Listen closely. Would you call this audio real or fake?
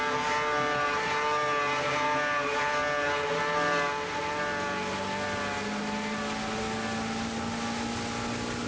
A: real